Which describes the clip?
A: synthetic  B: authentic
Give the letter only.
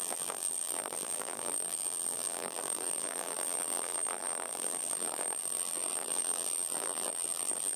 A